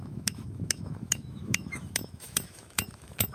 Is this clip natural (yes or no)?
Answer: no